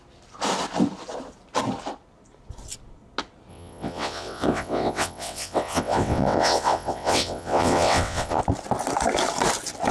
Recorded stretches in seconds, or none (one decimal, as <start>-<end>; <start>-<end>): 0.0-3.5; 8.4-9.9